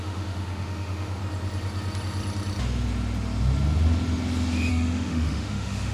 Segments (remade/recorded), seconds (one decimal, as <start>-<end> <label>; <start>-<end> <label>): 0.0-1.2 remade; 1.2-4.7 recorded; 4.7-5.9 remade